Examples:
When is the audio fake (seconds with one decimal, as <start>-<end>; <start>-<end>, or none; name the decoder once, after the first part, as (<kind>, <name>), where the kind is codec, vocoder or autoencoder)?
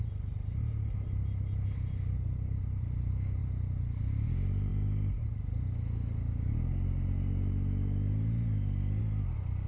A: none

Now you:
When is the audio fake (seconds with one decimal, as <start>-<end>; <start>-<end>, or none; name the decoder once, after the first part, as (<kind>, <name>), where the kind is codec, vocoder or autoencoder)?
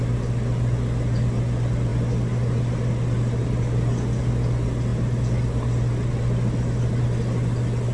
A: none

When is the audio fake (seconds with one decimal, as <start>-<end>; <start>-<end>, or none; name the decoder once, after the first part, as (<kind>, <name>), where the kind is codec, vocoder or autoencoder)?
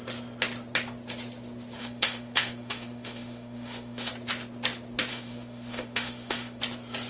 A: 1.8-4.1 (autoencoder, DAC-VAE); 5.1-6.6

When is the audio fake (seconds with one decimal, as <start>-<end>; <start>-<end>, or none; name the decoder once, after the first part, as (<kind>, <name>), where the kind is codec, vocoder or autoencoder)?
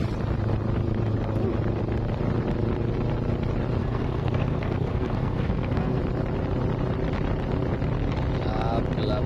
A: 3.8-6.0 (codec, SNAC)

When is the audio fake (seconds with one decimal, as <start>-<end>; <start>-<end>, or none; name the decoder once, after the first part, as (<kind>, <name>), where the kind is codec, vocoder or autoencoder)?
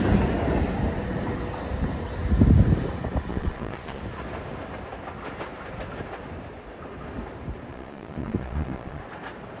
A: 3.3-4.0 (vocoder, Vocos); 7.7-9.0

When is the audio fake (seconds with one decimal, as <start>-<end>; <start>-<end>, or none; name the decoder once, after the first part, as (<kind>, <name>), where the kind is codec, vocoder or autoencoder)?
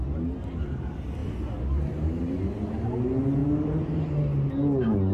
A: none